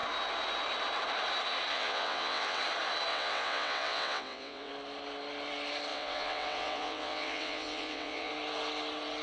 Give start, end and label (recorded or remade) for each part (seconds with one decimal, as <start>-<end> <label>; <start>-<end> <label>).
0.0-1.7 recorded; 1.7-2.6 remade; 2.6-3.1 recorded; 3.1-4.7 remade; 4.7-5.9 recorded; 5.9-8.3 remade; 8.3-9.2 recorded